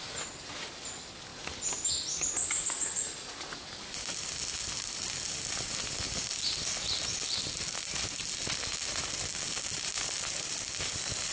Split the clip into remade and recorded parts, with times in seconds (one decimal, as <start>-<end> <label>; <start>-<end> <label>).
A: 0.0-11.3 recorded

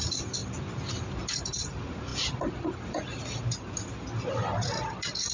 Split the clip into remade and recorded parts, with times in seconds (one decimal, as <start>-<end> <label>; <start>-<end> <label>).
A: 0.0-5.3 recorded

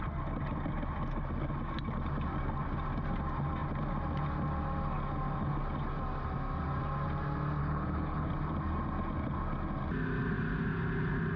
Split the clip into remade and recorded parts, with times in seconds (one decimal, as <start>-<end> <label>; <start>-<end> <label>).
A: 0.0-7.6 recorded; 7.6-8.3 remade; 8.3-11.4 recorded

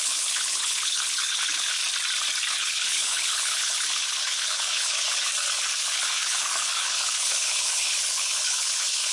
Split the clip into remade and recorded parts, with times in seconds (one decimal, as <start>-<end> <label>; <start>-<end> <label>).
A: 0.0-1.8 remade; 1.8-2.5 recorded; 2.5-5.3 remade; 5.3-5.8 recorded; 5.8-9.1 remade

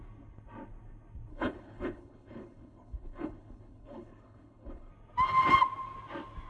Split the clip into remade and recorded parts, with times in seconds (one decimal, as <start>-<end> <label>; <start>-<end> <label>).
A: 0.0-1.3 recorded; 1.3-4.9 remade; 4.9-6.5 recorded

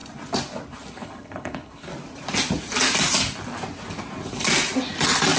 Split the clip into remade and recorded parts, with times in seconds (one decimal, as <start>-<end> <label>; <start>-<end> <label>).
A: 0.0-0.9 recorded; 0.9-1.9 remade; 1.9-5.4 recorded

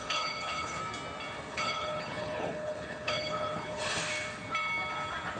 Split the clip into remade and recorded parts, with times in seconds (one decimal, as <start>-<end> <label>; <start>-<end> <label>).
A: 0.0-0.8 remade; 0.8-1.5 recorded; 1.5-4.0 remade; 4.0-5.4 recorded

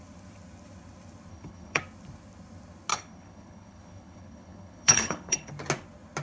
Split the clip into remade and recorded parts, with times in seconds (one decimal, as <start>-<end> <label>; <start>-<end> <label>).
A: 0.0-1.3 recorded; 1.3-1.8 remade; 1.8-2.9 recorded; 2.9-5.5 remade; 5.5-6.2 recorded